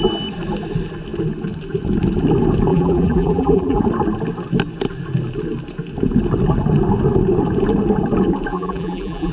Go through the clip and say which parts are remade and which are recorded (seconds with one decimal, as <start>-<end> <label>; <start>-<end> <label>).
0.0-2.7 recorded; 2.7-3.8 remade; 3.8-8.5 recorded; 8.5-9.3 remade